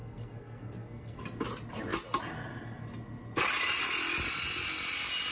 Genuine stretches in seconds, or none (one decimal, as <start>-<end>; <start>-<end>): 1.2-5.3